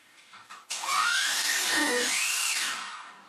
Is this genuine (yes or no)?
no